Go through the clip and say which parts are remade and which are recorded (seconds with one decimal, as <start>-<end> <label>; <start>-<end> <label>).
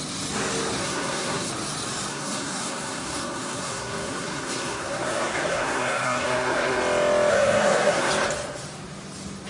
0.0-0.8 recorded; 0.8-1.5 remade; 1.5-2.1 recorded; 2.1-6.8 remade; 6.8-7.3 recorded; 7.3-8.1 remade; 8.1-9.5 recorded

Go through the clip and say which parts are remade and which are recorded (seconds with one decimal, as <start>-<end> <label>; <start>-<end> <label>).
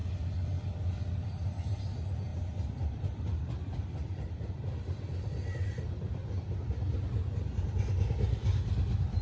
0.0-1.2 remade; 1.2-2.3 recorded; 2.3-6.7 remade; 6.7-8.4 recorded; 8.4-9.2 remade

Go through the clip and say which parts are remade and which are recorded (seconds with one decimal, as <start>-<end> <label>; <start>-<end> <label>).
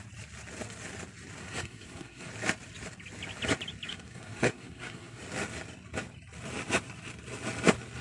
0.0-1.4 recorded; 1.4-2.3 remade; 2.3-3.9 recorded; 3.9-5.2 remade; 5.2-8.0 recorded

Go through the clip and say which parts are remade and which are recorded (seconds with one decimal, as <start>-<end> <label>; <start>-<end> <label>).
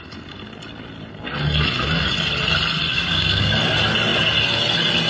0.0-2.9 recorded; 2.9-3.5 remade; 3.5-5.1 recorded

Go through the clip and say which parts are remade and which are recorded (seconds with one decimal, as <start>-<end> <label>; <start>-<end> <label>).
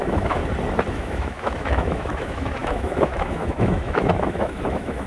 0.0-0.4 remade; 0.4-0.9 recorded; 0.9-5.1 remade